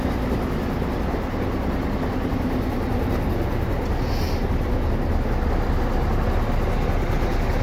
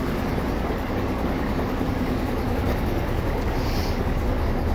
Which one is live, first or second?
first